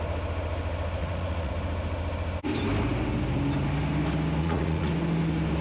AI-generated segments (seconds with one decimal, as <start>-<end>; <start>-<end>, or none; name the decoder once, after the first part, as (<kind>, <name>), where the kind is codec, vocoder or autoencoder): 1.0-1.5 (vocoder, Vocos); 4.4-4.9